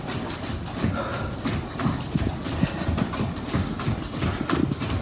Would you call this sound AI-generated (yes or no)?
no